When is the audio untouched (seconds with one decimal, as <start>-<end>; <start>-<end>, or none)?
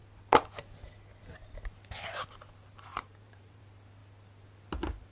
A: 0.0-2.9; 3.6-5.1